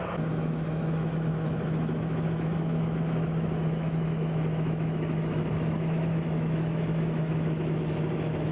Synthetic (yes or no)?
yes